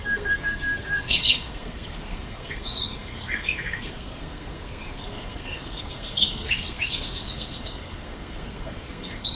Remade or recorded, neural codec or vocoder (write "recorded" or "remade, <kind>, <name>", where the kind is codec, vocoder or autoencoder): remade, codec, SNAC